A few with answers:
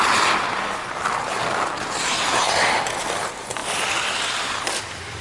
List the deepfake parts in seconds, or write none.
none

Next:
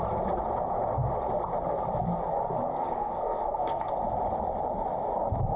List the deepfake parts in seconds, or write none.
2.7-3.9 (codec, SNAC)